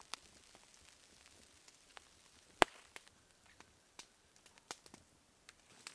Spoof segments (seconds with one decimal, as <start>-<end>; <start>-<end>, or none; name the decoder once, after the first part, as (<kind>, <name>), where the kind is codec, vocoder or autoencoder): 1.9-4.7 (vocoder, BigVGAN v2)